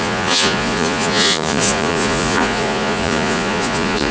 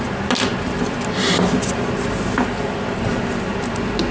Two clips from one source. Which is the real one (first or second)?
second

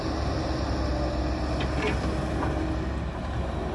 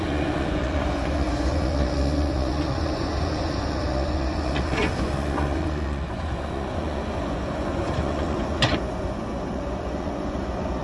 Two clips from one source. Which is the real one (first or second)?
first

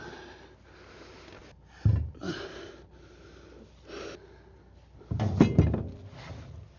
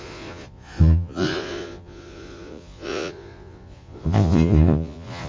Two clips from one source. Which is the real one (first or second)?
first